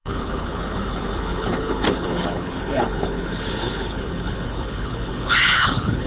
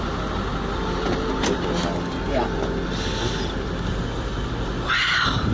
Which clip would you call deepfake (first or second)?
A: first